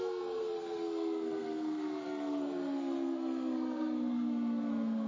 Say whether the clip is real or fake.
fake